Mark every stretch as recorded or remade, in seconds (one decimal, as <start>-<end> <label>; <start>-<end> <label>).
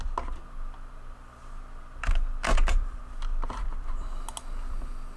0.0-2.5 recorded; 2.5-3.0 remade; 3.0-5.2 recorded